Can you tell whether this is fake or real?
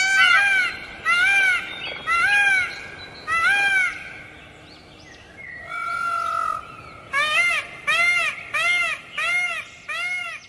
real